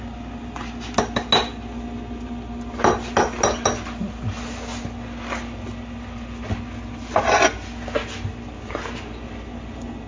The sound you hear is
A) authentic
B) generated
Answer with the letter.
A